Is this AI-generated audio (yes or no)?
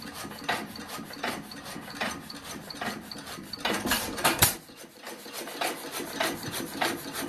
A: yes